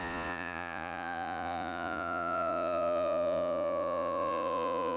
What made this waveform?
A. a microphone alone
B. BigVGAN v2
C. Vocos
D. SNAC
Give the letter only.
C